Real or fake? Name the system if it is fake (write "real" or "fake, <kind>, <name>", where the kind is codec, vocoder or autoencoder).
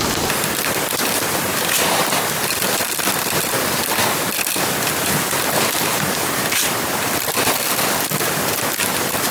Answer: real